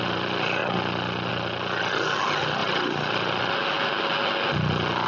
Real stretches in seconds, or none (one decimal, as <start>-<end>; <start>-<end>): 0.0-5.1